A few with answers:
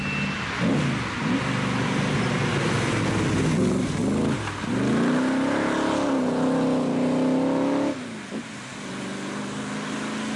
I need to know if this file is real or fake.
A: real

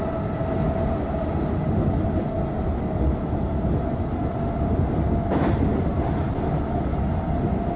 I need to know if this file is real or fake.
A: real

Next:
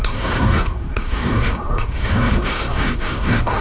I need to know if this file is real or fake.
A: fake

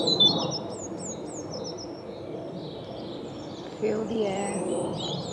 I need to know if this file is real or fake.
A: real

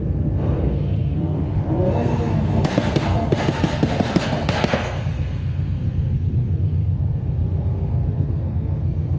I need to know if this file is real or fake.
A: fake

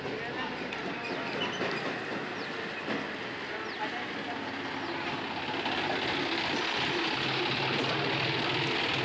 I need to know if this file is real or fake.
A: real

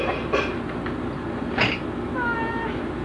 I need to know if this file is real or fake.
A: real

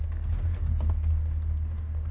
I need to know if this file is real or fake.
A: fake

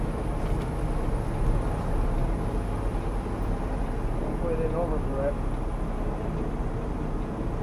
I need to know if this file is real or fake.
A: real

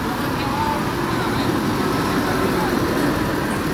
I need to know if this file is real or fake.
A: real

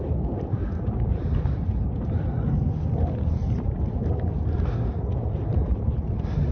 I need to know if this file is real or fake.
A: real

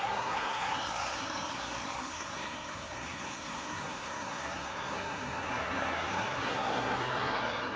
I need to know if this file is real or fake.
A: fake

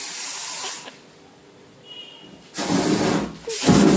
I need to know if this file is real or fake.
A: real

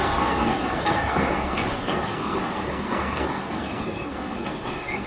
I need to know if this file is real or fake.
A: fake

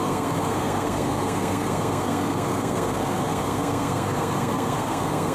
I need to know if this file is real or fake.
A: fake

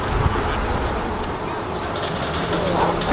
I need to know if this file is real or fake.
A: real